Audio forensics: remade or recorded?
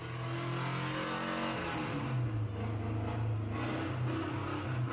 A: recorded